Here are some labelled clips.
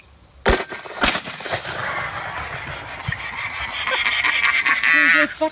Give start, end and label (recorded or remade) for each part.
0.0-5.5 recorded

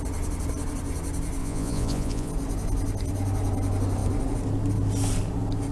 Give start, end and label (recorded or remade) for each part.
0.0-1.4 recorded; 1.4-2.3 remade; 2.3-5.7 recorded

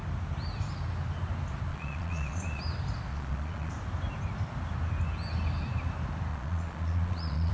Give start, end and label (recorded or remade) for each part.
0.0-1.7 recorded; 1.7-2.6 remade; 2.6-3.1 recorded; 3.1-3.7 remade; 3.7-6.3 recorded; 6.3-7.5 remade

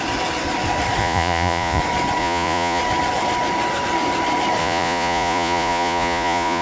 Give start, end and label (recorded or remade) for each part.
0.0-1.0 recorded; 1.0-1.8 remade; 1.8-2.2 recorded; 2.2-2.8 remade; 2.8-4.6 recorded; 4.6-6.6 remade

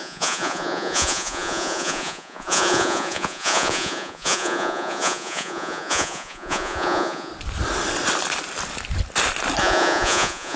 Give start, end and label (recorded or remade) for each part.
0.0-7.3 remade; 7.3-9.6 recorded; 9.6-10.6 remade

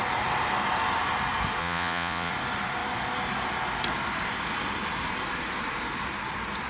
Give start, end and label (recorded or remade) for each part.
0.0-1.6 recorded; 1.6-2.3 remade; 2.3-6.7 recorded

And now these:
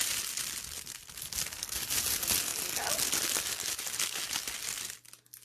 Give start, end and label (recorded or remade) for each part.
0.0-5.4 recorded

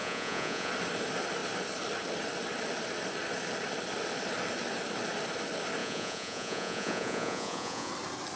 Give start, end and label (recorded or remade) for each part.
0.0-0.7 remade; 0.7-5.8 recorded; 5.8-7.9 remade; 7.9-8.4 recorded